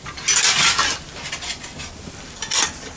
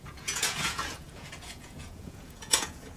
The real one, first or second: first